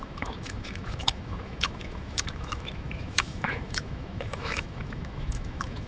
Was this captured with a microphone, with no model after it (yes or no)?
no